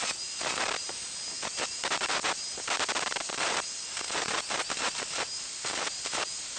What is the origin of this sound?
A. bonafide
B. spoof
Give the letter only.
A